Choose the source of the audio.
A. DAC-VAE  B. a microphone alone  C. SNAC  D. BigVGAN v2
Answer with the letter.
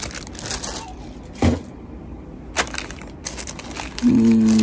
B